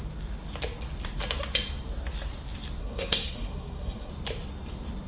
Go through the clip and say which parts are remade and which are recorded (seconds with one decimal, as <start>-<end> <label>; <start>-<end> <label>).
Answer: 0.0-2.8 recorded; 2.8-4.1 remade; 4.1-5.1 recorded